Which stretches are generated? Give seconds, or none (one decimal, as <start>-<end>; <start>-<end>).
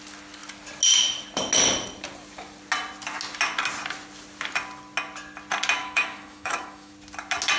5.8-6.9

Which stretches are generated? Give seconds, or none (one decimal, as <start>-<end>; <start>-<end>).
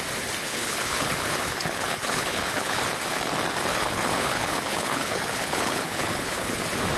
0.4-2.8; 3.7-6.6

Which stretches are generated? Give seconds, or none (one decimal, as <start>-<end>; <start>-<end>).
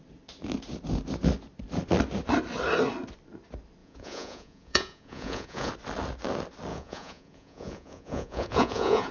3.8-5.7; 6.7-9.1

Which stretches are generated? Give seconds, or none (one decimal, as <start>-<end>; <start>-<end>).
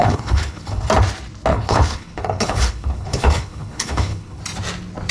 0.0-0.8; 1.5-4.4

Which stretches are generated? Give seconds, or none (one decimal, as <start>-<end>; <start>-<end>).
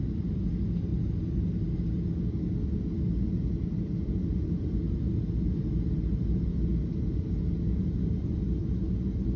none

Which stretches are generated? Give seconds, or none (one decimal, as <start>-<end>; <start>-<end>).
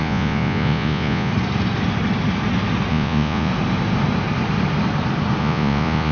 0.0-1.3; 2.9-3.5; 5.4-6.1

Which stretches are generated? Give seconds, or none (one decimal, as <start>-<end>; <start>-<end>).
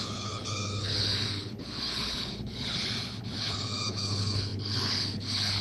0.0-5.6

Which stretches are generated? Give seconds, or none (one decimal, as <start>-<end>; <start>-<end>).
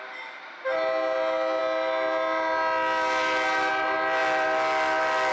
none